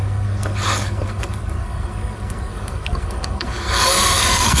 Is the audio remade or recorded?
remade